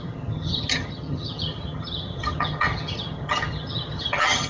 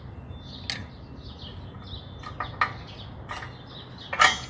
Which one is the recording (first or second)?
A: second